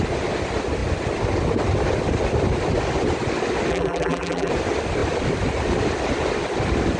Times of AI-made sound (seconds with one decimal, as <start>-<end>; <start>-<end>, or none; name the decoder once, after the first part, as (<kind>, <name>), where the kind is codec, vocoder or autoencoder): 3.7-4.5 (vocoder, BigVGAN v2)